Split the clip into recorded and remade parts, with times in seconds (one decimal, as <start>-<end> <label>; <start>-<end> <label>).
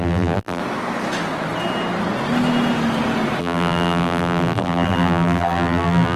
0.0-0.6 remade; 0.6-3.4 recorded; 3.4-6.2 remade